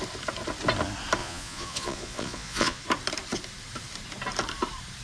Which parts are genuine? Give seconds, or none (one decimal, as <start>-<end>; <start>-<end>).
0.0-1.2; 2.8-5.0